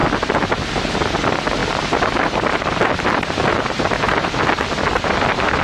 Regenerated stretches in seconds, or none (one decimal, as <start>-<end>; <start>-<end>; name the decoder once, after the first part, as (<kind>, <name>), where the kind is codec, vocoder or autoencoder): 1.6-4.5 (vocoder, BigVGAN v2)